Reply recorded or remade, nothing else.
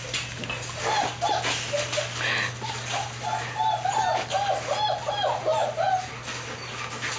recorded